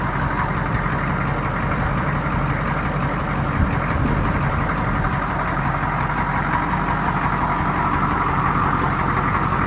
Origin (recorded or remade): recorded